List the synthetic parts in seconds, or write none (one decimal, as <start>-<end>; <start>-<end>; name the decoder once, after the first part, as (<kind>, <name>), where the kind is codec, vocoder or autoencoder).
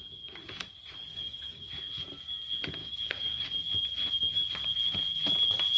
1.1-1.7 (codec, DAC); 2.8-3.5